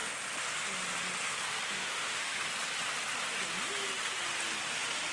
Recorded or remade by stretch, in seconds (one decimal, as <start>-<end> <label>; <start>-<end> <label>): 0.0-1.7 recorded; 1.7-2.5 remade; 2.5-5.1 recorded